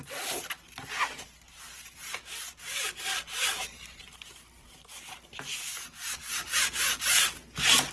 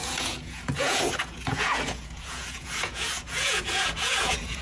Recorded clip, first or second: first